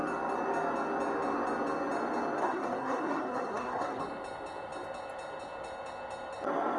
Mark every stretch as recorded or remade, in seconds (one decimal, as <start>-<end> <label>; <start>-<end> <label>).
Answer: 0.0-2.4 recorded; 2.4-4.0 remade; 4.0-6.8 recorded